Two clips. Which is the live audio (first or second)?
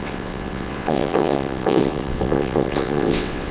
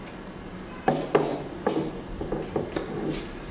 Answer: second